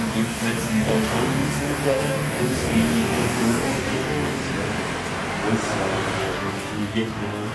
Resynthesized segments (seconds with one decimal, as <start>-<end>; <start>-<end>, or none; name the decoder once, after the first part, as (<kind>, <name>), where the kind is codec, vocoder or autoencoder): 0.0-4.4 (codec, DAC); 6.2-7.5